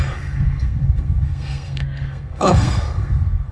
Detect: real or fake fake